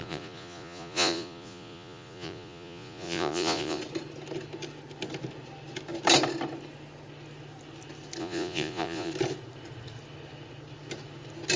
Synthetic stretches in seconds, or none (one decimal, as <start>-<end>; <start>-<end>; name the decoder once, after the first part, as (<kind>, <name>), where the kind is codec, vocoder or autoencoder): 0.0-3.8 (vocoder, Vocos); 8.2-9.1

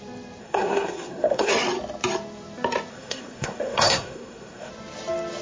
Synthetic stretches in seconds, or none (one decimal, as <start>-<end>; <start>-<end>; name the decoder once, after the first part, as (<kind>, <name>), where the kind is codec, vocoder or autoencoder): 0.4-1.5 (codec, SNAC); 2.9-4.7

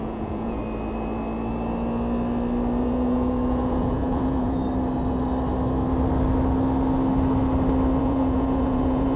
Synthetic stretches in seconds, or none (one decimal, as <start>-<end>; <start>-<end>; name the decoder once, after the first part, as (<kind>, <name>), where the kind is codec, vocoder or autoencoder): 0.0-0.6 (vocoder, Vocos); 2.8-4.6; 8.0-9.2

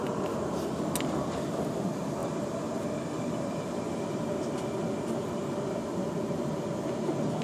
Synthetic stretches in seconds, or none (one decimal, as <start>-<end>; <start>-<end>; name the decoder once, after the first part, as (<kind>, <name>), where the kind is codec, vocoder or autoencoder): none

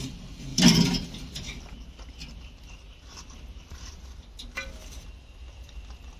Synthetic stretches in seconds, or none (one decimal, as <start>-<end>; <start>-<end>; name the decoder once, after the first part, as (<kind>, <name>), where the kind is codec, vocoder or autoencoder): 0.5-4.2 (vocoder, BigVGAN v2)

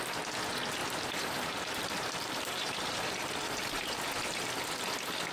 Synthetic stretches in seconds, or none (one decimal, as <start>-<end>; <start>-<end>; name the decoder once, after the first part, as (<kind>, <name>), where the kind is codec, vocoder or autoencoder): 0.8-4.0 (vocoder, BigVGAN v2)

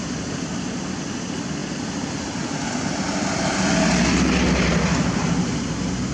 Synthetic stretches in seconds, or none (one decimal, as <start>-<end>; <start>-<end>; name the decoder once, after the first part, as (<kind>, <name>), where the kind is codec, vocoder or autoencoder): none

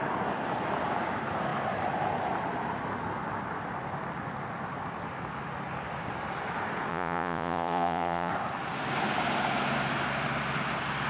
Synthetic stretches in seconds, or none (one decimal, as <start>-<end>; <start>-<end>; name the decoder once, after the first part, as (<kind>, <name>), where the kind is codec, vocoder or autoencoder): 6.9-8.3 (vocoder, Vocos)